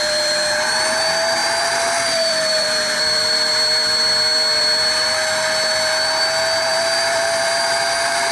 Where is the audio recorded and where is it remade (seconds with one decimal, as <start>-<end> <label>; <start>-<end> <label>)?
0.0-1.4 recorded; 1.4-3.5 remade; 3.5-6.7 recorded; 6.7-8.3 remade